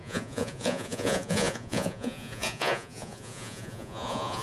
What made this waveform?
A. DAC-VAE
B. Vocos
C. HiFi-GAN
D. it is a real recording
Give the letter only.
B